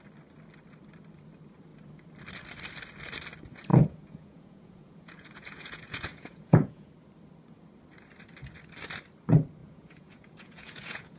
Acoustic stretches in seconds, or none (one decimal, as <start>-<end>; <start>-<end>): 0.0-3.7; 6.9-9.6